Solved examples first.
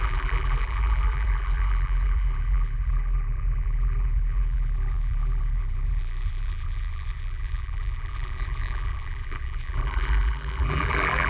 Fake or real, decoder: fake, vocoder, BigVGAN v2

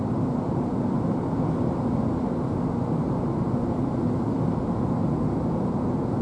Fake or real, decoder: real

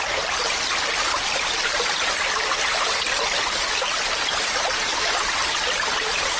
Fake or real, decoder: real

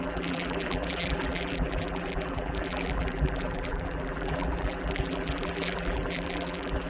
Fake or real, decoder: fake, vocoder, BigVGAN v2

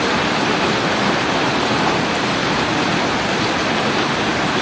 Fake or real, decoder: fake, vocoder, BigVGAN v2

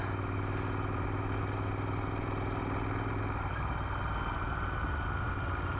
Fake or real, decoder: real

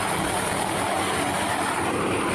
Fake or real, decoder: real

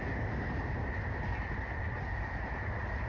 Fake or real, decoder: real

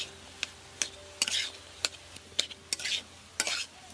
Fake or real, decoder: real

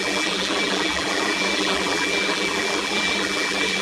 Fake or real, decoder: fake, vocoder, BigVGAN v2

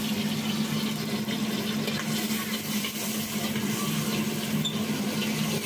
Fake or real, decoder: real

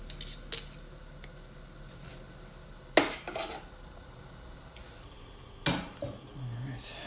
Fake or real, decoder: real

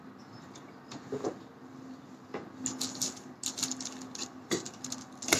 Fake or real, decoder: real